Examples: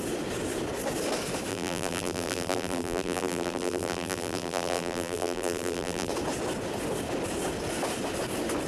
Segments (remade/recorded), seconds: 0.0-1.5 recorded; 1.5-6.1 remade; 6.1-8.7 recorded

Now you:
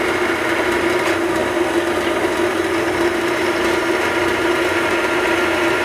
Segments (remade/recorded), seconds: 0.0-5.8 recorded

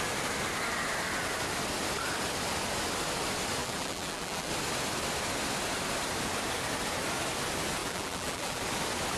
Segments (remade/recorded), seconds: 0.0-3.6 recorded; 3.6-4.5 remade; 4.5-7.8 recorded; 7.8-8.6 remade; 8.6-9.2 recorded

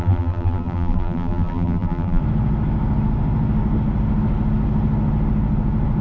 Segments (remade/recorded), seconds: 0.0-2.2 remade; 2.2-6.0 recorded

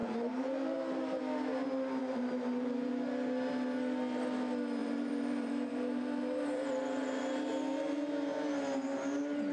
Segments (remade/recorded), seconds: 0.0-1.2 remade; 1.2-2.0 recorded; 2.0-2.9 remade; 2.9-4.8 recorded; 4.8-7.5 remade; 7.5-9.5 recorded

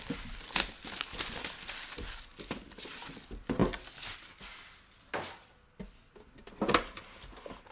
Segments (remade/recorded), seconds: 0.0-7.7 recorded

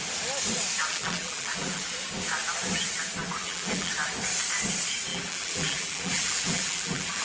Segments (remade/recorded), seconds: 0.0-0.9 recorded; 0.9-1.9 remade; 1.9-3.4 recorded; 3.4-3.9 remade; 3.9-5.1 recorded; 5.1-7.2 remade